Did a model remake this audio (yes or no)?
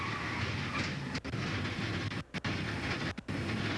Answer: no